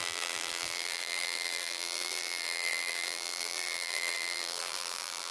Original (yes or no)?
no